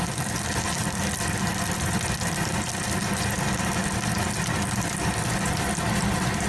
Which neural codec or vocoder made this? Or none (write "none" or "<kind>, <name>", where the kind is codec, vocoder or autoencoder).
none